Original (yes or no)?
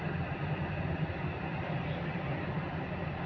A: yes